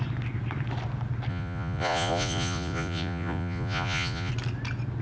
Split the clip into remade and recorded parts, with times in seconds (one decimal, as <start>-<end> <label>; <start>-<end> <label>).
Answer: 0.0-1.3 recorded; 1.3-4.3 remade; 4.3-5.0 recorded